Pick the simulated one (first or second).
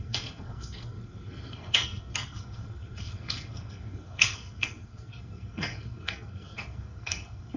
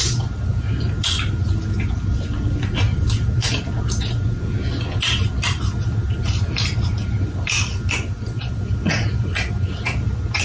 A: first